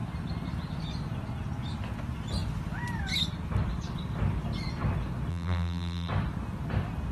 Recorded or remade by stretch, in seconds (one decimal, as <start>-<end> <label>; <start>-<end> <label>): 0.0-5.3 recorded; 5.3-6.1 remade; 6.1-7.1 recorded